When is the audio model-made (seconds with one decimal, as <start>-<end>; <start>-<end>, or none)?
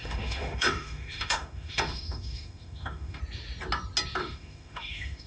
0.0-3.2; 4.2-5.3